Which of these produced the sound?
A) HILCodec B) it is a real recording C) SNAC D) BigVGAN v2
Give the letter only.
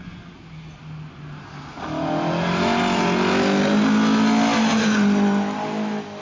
B